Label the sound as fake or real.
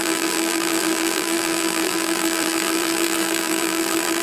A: fake